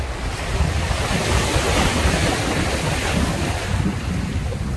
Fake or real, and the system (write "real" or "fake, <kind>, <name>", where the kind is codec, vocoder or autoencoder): real